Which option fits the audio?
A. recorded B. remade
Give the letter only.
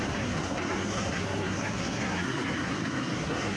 B